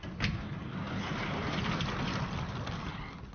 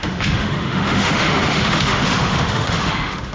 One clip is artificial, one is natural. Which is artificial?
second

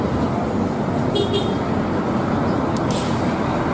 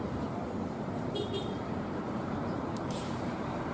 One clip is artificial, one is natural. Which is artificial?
second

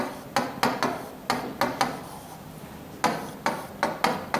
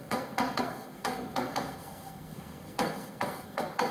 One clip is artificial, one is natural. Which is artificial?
second